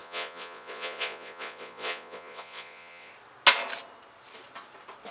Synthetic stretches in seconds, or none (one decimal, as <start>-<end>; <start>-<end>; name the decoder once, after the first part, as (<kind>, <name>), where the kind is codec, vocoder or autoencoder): 0.0-3.1 (vocoder, Vocos)